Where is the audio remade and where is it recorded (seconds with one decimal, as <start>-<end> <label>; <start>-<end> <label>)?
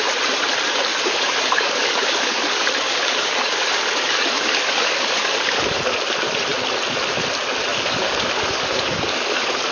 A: 0.0-0.9 recorded; 0.9-5.8 remade; 5.8-7.7 recorded; 7.7-9.7 remade